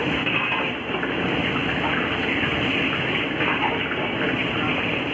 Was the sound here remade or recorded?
recorded